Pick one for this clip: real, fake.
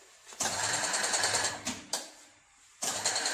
fake